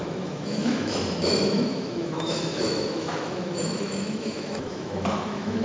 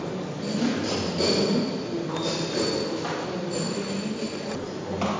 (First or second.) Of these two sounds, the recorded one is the second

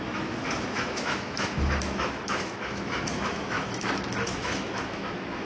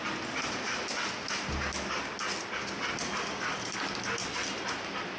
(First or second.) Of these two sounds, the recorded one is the second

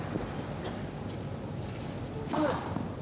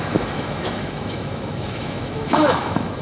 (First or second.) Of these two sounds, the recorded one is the first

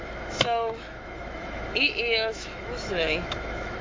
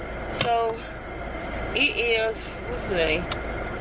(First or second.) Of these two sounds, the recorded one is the second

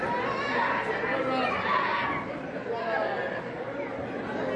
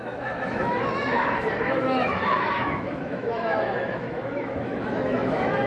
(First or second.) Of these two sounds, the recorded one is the first